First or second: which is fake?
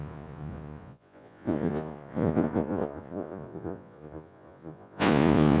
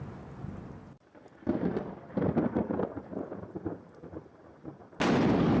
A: first